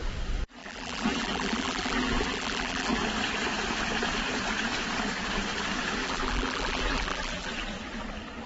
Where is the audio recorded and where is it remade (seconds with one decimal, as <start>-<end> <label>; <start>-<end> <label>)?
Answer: 0.0-0.6 recorded; 0.6-3.0 remade; 3.0-6.0 recorded; 6.0-7.5 remade; 7.5-8.5 recorded